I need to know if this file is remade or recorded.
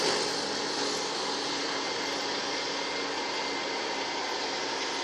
recorded